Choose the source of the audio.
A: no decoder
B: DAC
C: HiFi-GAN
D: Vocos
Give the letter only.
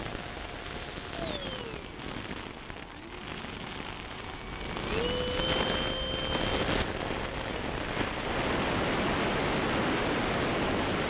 A